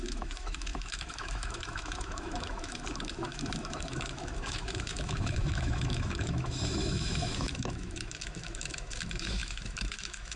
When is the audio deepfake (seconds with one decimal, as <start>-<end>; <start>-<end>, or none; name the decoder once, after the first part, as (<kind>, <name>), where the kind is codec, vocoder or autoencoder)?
0.0-10.4 (autoencoder, DAC-VAE)